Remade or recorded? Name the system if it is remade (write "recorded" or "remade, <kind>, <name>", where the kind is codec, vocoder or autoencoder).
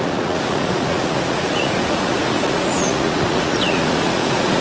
remade, vocoder, Vocos